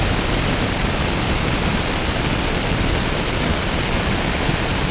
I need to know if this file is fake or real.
real